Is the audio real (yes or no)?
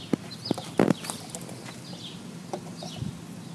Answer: yes